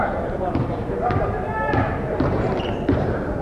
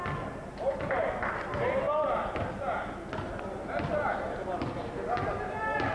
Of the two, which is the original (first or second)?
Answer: second